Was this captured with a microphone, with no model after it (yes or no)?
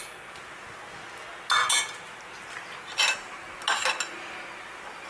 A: yes